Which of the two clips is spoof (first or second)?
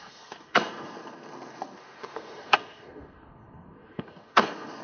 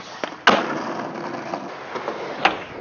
first